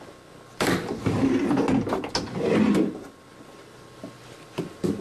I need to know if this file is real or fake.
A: real